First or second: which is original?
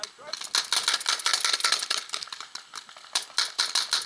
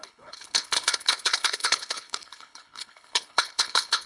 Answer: first